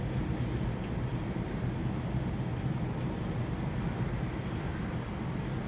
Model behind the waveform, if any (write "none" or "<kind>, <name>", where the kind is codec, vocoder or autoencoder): none